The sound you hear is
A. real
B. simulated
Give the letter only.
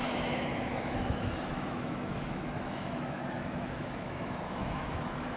B